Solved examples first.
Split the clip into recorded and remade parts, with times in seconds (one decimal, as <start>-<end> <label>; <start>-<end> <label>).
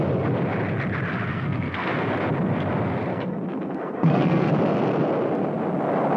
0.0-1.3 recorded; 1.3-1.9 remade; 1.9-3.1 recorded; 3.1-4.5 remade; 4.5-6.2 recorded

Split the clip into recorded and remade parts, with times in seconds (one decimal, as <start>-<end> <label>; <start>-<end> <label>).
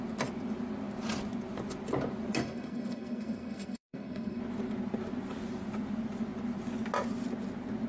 0.0-2.4 recorded; 2.4-4.4 remade; 4.4-7.9 recorded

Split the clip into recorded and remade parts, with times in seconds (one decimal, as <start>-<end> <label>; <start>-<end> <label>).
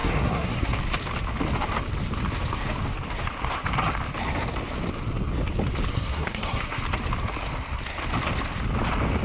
0.0-0.7 remade; 0.7-5.9 recorded; 5.9-6.8 remade; 6.8-9.2 recorded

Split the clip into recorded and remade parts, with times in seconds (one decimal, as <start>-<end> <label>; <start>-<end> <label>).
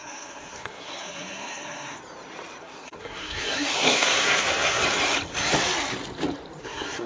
0.0-2.0 remade; 2.0-2.6 recorded; 2.6-4.8 remade; 4.8-6.6 recorded; 6.6-7.1 remade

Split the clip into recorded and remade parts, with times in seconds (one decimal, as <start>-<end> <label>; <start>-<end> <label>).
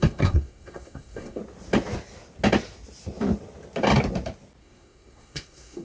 0.0-1.4 remade; 1.4-4.6 recorded; 4.6-5.8 remade